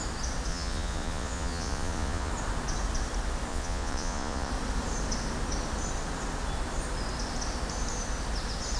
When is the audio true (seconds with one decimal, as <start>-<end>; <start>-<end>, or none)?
0.0-0.5; 2.3-3.5; 4.5-8.8